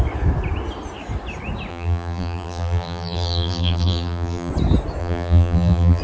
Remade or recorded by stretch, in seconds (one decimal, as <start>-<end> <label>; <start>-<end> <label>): 0.0-1.7 recorded; 1.7-4.5 remade; 4.5-5.0 recorded; 5.0-6.0 remade